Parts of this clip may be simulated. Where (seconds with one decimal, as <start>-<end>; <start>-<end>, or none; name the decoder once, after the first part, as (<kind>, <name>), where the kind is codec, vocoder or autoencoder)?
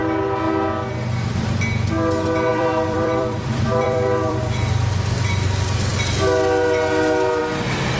2.5-4.8 (vocoder, BigVGAN v2)